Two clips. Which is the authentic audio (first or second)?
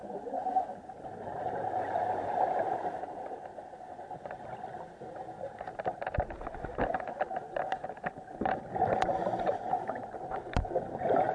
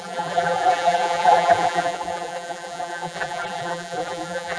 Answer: first